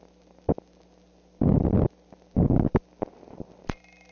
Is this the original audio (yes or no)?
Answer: yes